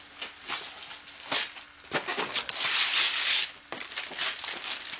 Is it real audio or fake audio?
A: real